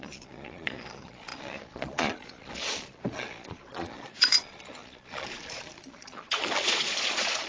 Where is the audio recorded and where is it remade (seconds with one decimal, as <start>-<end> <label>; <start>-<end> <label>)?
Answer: 0.0-7.5 remade